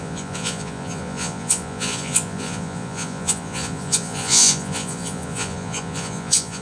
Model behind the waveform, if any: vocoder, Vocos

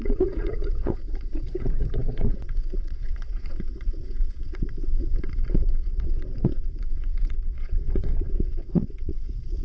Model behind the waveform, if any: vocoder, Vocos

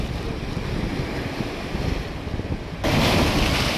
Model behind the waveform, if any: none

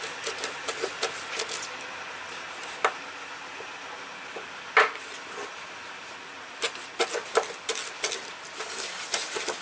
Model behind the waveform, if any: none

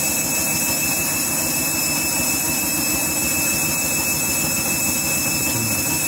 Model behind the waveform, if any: none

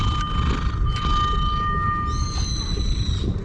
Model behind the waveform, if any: none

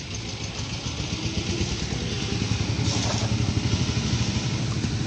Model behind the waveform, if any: none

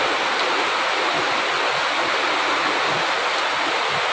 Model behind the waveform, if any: none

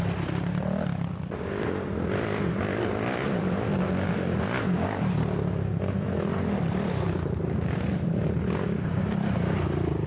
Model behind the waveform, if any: none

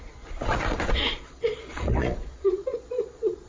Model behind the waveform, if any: vocoder, Vocos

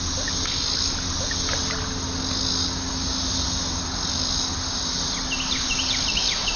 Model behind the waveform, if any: none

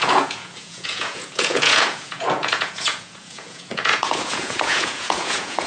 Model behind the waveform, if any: vocoder, Vocos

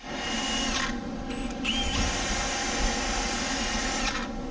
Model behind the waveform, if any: none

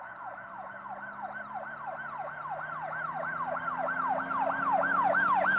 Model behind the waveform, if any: none